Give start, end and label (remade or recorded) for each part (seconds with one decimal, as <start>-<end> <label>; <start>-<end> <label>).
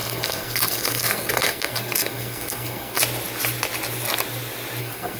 0.0-3.0 remade; 3.0-4.8 recorded; 4.8-5.2 remade